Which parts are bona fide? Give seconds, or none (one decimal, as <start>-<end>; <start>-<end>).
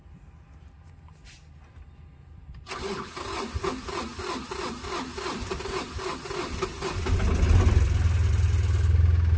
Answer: 0.0-9.4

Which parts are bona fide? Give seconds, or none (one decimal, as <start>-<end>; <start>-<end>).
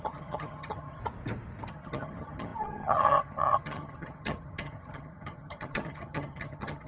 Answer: 1.0-1.7